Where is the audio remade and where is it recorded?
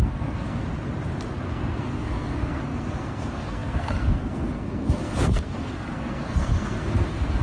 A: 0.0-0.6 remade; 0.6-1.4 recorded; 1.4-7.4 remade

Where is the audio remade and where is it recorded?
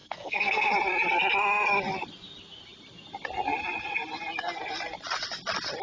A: 0.0-0.7 remade; 0.7-5.8 recorded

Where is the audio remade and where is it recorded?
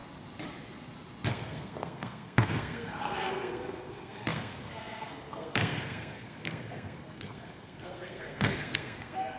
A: 0.0-1.3 recorded; 1.3-9.4 remade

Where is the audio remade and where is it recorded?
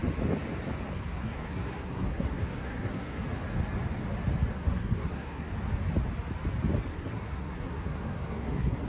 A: 0.0-1.2 recorded; 1.2-3.2 remade; 3.2-4.5 recorded; 4.5-5.5 remade; 5.5-6.9 recorded; 6.9-8.9 remade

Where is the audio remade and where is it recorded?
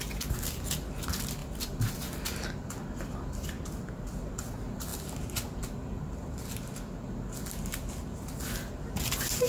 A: 0.0-9.5 recorded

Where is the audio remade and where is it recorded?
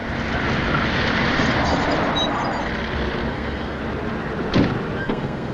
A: 0.0-3.3 recorded; 3.3-3.8 remade; 3.8-5.0 recorded; 5.0-5.5 remade